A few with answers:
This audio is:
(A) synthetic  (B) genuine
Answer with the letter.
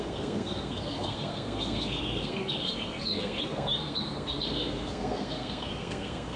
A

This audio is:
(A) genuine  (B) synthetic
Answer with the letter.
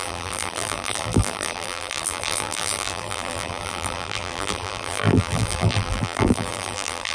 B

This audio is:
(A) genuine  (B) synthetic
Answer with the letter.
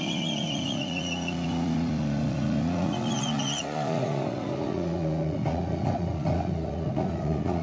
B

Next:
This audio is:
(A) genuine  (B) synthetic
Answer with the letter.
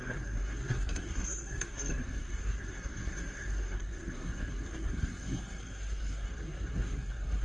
B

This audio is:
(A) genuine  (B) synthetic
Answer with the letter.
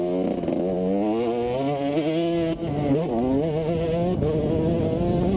A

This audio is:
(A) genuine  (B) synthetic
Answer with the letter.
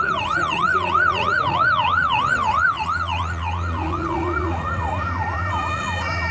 B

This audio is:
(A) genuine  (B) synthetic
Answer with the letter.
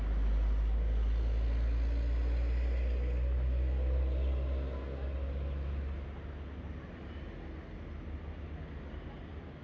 A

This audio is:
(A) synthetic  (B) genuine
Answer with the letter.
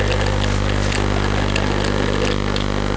B